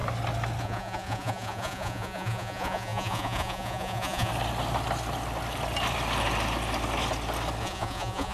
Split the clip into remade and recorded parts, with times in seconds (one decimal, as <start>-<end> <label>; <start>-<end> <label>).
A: 0.0-0.6 recorded; 0.6-4.3 remade; 4.3-7.6 recorded; 7.6-8.3 remade